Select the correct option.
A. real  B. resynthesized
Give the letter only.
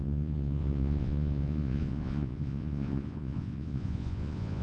B